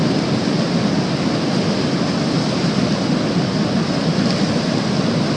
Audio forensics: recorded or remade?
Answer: recorded